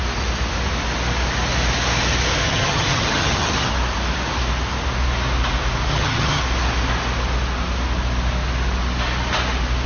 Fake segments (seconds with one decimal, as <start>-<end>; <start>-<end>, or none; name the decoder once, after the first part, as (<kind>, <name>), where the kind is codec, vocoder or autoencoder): 2.4-3.7 (vocoder, HiFi-GAN); 5.9-6.4